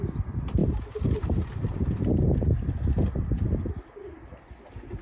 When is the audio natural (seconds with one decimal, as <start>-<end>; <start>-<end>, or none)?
0.0-5.0